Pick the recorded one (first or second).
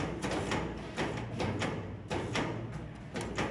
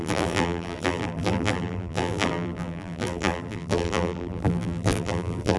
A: first